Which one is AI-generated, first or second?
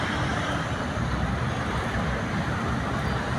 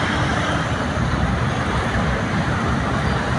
second